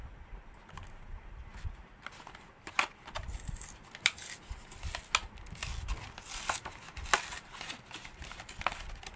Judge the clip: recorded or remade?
recorded